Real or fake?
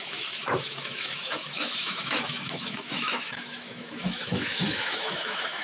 fake